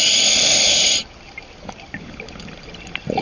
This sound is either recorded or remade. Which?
recorded